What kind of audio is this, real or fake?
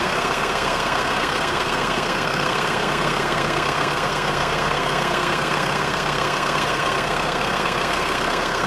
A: fake